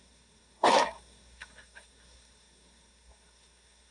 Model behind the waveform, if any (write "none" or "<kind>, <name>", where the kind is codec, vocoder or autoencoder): codec, SNAC